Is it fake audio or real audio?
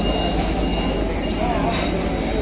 real